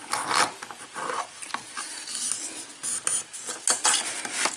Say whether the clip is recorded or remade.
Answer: recorded